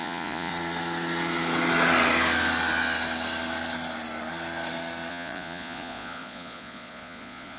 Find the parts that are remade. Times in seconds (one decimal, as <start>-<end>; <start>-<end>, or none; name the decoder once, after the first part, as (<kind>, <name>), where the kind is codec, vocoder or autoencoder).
0.0-0.5 (vocoder, Vocos); 5.1-7.6